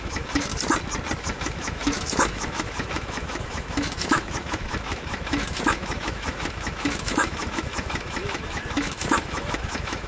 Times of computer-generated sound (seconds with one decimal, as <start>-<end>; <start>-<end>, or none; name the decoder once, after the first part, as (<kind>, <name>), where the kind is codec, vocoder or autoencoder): 0.0-0.5 (autoencoder, DAC-VAE); 1.2-10.1